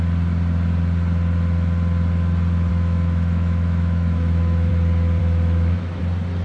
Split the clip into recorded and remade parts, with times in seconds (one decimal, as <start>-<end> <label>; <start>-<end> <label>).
0.0-2.7 recorded; 2.7-4.7 remade; 4.7-5.2 recorded; 5.2-6.0 remade; 6.0-6.4 recorded